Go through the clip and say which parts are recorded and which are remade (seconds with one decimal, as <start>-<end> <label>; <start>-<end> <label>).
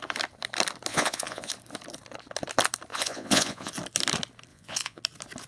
0.0-0.9 recorded; 0.9-1.5 remade; 1.5-2.9 recorded; 2.9-3.7 remade; 3.7-4.5 recorded; 4.5-5.0 remade; 5.0-5.5 recorded